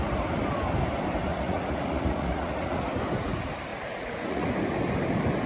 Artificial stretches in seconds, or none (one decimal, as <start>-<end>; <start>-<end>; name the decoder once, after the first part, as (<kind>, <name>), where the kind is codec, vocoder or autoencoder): 1.3-2.9 (vocoder, Vocos); 3.7-4.5